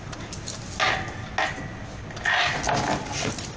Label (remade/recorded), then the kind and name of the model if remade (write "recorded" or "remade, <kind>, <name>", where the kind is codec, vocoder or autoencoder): recorded